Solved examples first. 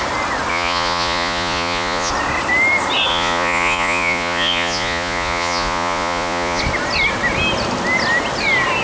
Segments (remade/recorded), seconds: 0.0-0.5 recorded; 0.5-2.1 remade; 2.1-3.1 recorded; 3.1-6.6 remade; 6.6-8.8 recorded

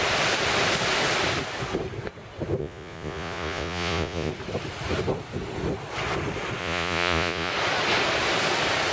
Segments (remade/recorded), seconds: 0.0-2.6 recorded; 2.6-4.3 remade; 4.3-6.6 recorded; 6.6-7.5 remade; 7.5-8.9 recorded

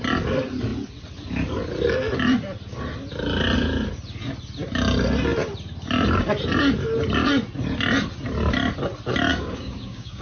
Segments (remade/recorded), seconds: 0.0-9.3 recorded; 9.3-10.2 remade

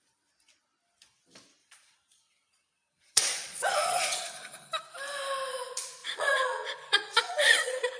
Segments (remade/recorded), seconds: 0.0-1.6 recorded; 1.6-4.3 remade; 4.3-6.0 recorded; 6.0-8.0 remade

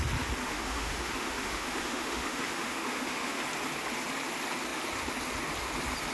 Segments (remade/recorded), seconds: 0.0-0.4 recorded; 0.4-3.4 remade; 3.4-6.1 recorded